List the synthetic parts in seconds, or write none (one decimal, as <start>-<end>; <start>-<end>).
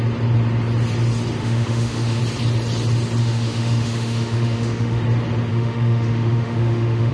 1.4-2.2; 3.2-5.0; 5.5-7.1